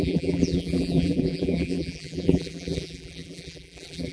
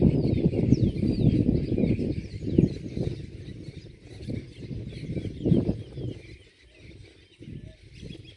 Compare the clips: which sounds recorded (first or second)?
second